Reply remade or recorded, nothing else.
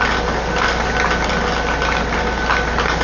recorded